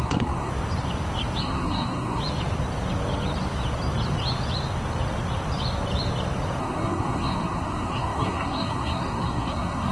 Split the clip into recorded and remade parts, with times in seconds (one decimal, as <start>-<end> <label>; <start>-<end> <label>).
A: 0.0-0.5 remade; 0.5-1.4 recorded; 1.4-2.2 remade; 2.2-6.6 recorded; 6.6-9.9 remade